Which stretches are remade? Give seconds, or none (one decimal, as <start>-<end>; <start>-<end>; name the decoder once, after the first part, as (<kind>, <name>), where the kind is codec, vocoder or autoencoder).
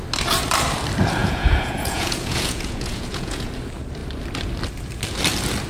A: 1.2-3.5 (vocoder, Vocos)